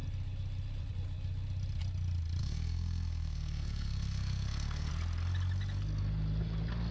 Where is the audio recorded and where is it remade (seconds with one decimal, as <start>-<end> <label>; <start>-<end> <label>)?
0.0-2.4 recorded; 2.4-4.9 remade; 4.9-6.9 recorded